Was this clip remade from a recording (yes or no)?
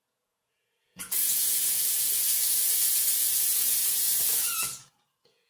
yes